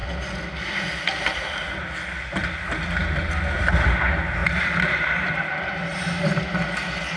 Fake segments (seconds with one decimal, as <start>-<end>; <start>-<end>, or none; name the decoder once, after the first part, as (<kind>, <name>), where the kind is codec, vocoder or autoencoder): 4.4-5.3 (vocoder, BigVGAN v2); 5.9-6.4